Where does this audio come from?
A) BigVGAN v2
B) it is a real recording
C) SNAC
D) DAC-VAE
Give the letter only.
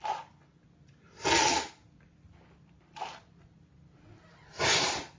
B